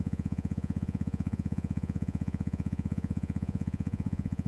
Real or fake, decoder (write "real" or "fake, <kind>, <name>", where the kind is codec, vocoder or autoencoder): fake, vocoder, Vocos